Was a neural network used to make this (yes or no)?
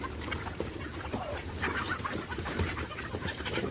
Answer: yes